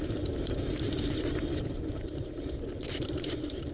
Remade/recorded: remade